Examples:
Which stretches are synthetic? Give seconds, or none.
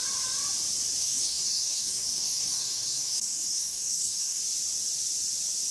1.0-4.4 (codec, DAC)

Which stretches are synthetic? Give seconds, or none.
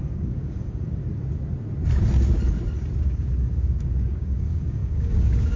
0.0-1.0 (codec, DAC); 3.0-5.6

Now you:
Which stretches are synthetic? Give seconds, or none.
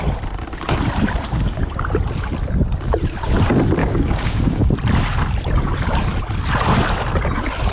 3.8-4.7 (codec, DAC)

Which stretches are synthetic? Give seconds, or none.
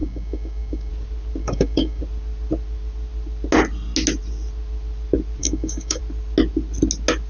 0.0-0.9 (codec, DAC); 1.4-2.0; 5.4-6.0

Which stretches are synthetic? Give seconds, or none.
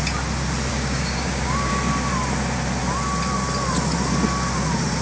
0.7-1.7 (codec, DAC)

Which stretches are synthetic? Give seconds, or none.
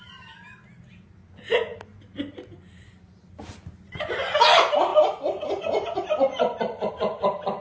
none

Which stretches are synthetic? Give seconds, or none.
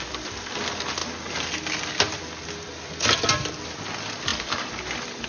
none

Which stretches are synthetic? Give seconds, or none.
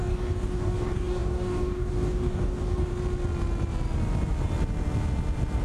0.0-2.9 (codec, DAC)